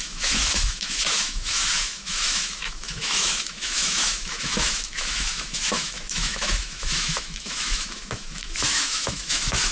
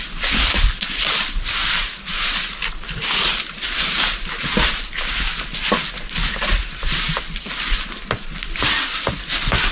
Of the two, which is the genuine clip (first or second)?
second